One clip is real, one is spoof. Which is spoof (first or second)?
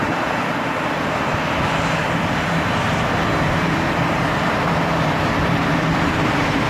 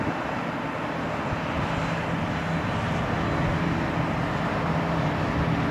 first